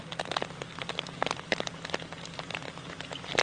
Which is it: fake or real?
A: real